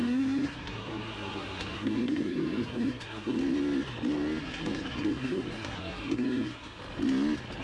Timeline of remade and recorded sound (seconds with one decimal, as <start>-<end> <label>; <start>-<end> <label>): 0.0-3.4 remade; 3.4-4.4 recorded; 4.4-6.8 remade; 6.8-7.6 recorded